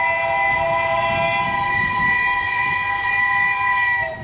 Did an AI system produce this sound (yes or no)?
no